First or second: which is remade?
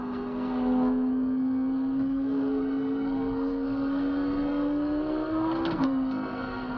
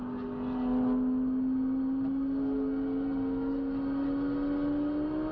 first